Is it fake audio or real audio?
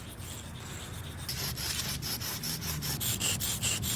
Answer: real